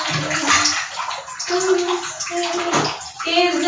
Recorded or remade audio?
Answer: recorded